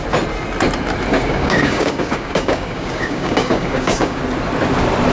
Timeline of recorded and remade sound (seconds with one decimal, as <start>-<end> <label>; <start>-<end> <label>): 0.0-1.1 recorded; 1.1-4.2 remade; 4.2-5.1 recorded